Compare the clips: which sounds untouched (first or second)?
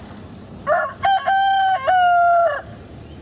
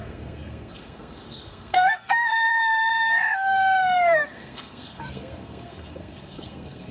first